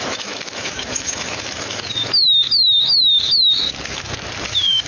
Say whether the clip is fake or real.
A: fake